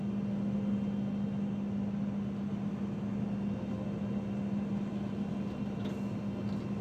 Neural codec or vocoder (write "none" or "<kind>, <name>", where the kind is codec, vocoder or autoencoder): none